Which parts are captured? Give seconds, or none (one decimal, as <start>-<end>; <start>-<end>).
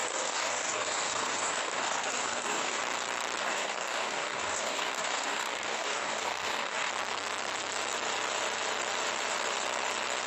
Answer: 2.8-3.4; 6.9-10.3